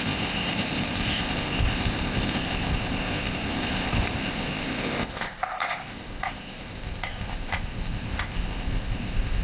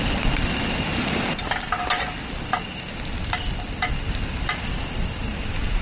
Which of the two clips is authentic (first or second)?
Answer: second